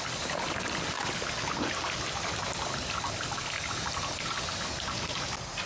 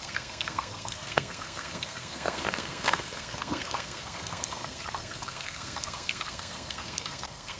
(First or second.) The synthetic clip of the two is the second